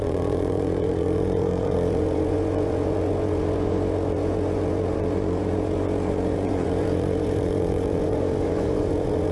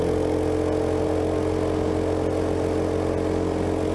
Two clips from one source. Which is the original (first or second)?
second